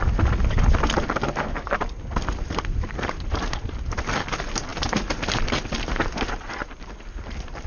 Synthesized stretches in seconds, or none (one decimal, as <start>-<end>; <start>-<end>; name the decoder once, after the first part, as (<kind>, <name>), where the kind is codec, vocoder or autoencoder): none